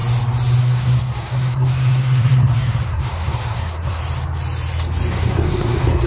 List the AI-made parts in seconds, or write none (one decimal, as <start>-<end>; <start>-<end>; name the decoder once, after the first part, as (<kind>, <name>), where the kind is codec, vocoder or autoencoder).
0.6-4.0 (codec, SNAC); 5.1-6.1

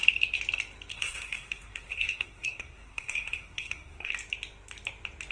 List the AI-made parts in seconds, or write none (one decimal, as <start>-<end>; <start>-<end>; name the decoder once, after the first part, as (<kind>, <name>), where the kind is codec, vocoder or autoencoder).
0.9-4.1 (codec, SNAC)

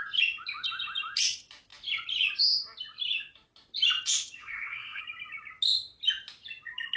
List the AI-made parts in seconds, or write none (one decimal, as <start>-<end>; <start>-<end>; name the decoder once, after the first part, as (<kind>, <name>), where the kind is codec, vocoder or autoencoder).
4.4-5.0 (codec, SNAC)

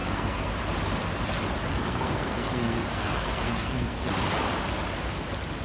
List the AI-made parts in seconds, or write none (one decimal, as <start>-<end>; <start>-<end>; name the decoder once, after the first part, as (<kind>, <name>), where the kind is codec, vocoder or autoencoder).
0.0-0.5 (codec, SNAC); 1.7-4.1

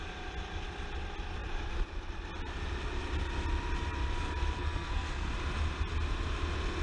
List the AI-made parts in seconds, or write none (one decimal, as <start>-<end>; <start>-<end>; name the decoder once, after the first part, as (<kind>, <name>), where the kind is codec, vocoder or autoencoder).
4.6-5.3 (codec, SNAC)

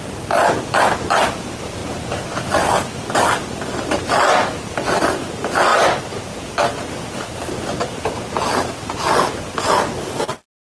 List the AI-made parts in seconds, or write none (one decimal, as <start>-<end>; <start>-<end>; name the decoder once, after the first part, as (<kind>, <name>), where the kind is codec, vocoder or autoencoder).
none

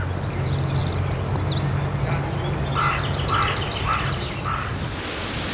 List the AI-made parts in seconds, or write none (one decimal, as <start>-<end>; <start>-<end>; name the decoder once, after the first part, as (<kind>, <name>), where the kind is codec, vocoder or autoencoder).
none